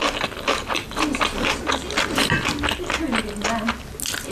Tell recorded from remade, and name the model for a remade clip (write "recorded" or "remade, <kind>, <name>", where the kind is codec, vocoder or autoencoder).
recorded